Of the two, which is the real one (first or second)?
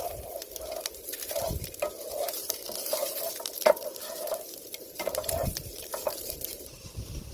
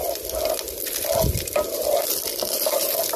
second